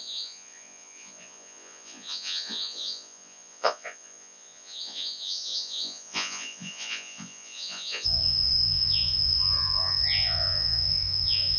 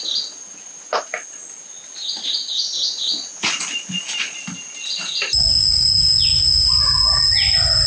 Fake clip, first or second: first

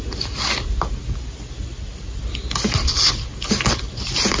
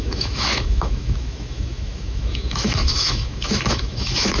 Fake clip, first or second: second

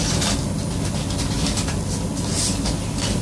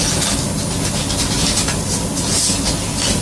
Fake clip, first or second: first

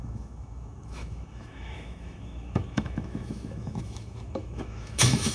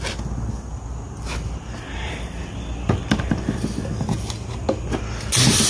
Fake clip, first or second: first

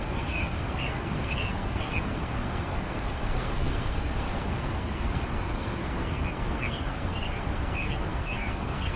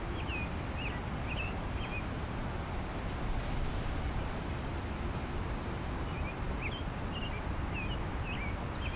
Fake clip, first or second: first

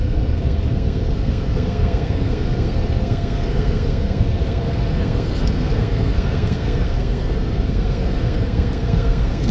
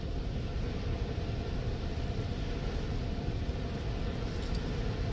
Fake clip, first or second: first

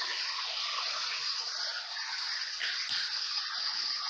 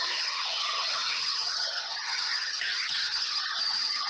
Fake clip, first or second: second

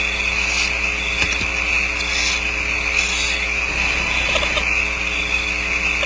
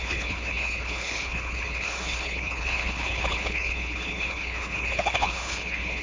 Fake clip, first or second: second